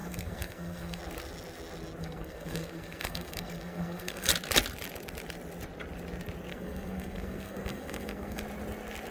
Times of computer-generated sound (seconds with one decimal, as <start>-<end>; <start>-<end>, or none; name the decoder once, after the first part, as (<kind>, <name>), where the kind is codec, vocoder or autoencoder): 0.0-1.0 (codec, SNAC); 2.0-4.3; 6.5-8.4